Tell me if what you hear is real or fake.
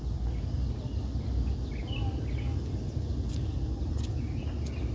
real